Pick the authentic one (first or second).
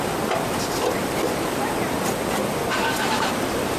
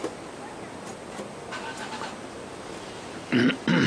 second